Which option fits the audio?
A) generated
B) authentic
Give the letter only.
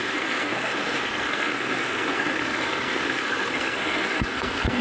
A